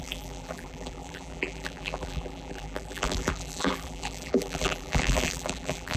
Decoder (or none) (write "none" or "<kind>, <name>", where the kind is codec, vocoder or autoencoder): vocoder, BigVGAN v2